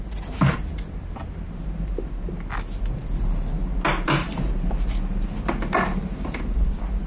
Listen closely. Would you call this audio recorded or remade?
recorded